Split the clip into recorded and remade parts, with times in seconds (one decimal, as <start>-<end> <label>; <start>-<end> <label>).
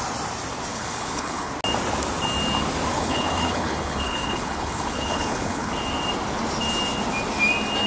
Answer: 0.0-0.7 recorded; 0.7-1.5 remade; 1.5-2.9 recorded; 2.9-5.7 remade; 5.7-7.9 recorded